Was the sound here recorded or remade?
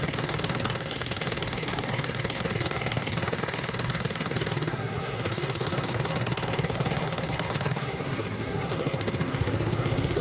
remade